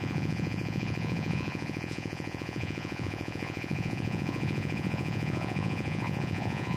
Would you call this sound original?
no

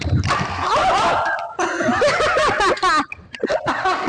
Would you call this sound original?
yes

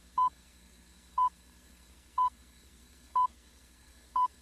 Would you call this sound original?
no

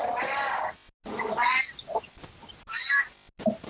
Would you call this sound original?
yes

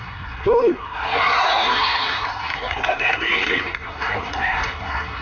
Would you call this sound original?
no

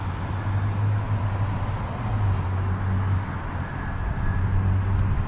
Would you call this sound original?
yes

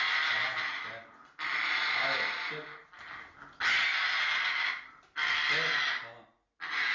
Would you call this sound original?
yes